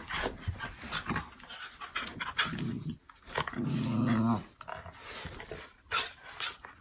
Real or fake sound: real